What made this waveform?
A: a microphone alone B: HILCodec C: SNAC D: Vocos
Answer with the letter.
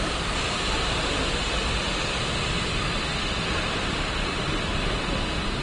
A